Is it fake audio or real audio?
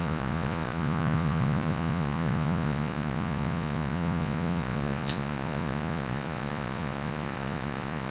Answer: fake